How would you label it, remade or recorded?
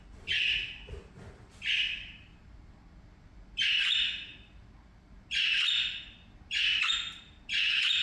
recorded